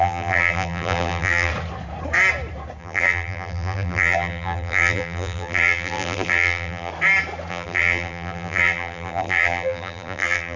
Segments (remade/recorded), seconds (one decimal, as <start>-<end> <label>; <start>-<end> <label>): 0.0-1.5 remade; 1.5-2.8 recorded; 2.8-6.9 remade; 6.9-7.5 recorded; 7.5-10.6 remade